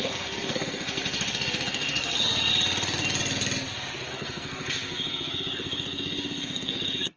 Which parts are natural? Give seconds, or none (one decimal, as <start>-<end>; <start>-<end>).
2.5-4.1